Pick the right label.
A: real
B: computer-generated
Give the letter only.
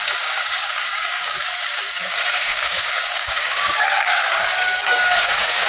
B